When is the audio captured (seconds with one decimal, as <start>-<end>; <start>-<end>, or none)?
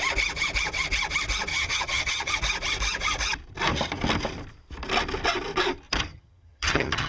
0.0-1.5; 2.3-6.1